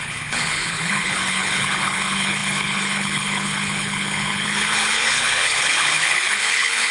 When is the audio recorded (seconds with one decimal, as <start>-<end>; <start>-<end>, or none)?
none